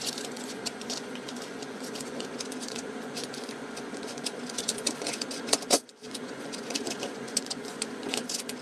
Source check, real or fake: fake